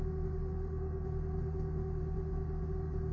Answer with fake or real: real